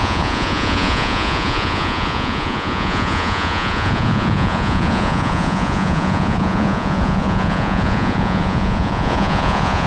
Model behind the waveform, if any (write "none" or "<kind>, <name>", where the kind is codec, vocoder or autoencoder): vocoder, Vocos